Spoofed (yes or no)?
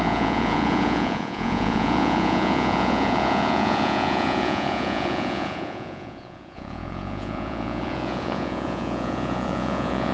yes